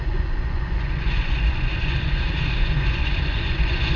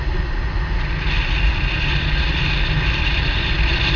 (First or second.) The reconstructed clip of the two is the first